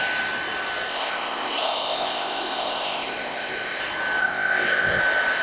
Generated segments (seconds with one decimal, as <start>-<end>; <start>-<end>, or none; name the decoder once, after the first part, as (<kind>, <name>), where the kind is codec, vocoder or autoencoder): 0.9-3.8 (codec, ZipCodec); 4.2-5.0